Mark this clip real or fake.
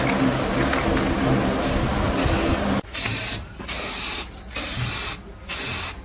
real